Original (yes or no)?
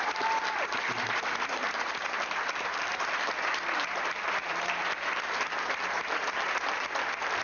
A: yes